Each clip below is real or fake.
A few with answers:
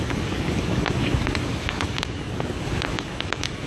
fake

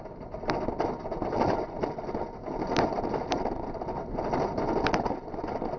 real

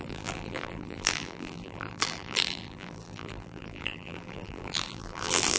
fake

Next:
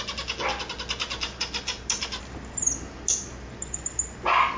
real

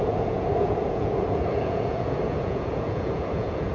fake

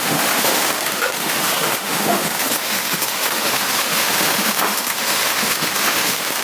fake